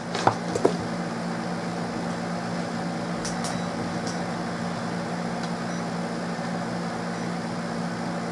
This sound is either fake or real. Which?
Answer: real